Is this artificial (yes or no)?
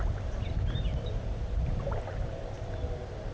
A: yes